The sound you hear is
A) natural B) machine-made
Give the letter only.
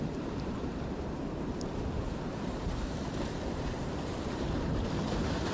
B